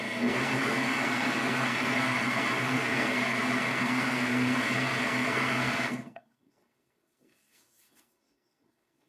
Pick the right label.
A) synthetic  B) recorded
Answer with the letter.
A